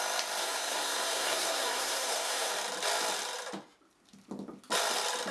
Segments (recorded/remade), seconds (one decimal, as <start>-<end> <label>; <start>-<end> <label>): 0.0-0.4 recorded; 0.4-2.5 remade; 2.5-5.3 recorded